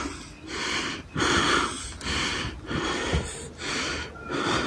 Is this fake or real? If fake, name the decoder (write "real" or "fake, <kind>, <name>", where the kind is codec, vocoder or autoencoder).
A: real